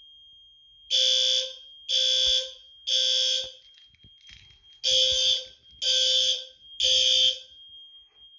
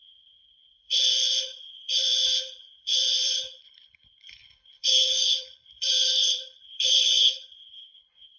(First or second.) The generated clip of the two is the second